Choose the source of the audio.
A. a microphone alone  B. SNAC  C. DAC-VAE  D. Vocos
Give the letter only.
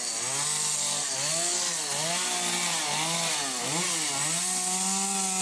A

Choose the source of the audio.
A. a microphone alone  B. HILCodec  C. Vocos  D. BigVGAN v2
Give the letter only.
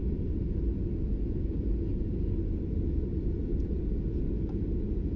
A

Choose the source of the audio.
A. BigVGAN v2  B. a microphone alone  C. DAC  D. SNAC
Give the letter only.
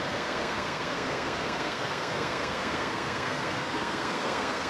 D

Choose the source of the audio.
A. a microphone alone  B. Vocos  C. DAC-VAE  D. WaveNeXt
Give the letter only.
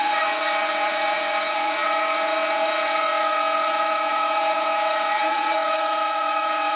D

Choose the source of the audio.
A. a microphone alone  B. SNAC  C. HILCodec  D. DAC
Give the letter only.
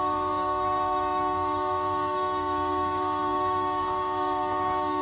D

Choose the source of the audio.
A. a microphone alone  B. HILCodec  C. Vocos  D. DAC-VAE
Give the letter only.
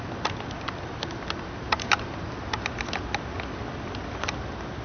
A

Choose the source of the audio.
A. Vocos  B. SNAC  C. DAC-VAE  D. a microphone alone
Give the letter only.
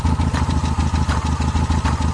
D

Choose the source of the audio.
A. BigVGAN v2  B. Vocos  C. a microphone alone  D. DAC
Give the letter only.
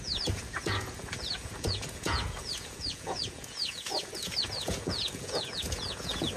B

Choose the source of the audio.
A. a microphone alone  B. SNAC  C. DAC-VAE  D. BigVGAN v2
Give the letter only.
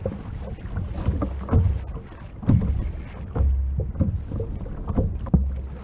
A